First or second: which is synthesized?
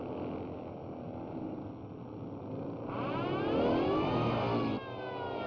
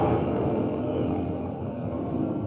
second